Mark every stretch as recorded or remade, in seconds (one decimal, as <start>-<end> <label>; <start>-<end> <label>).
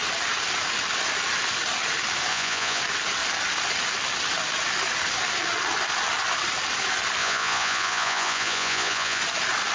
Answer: 0.0-2.3 recorded; 2.3-2.8 remade; 2.8-7.2 recorded; 7.2-9.2 remade; 9.2-9.7 recorded